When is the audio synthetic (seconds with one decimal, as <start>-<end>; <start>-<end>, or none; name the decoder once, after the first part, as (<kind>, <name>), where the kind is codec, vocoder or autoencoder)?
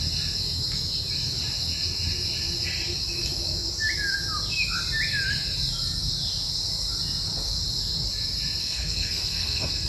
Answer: 8.6-9.9 (codec, SNAC)